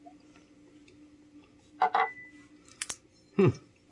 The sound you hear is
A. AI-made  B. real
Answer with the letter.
B